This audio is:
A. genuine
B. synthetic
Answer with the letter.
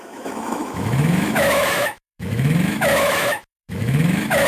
B